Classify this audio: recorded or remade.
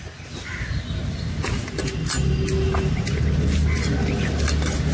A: recorded